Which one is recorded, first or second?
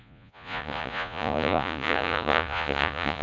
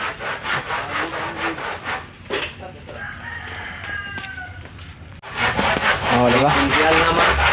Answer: second